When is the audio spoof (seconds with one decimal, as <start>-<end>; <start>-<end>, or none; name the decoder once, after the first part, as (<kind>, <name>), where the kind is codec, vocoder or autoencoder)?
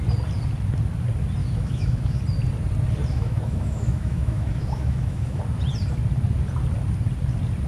1.4-2.2 (autoencoder, DAC-VAE); 3.1-5.4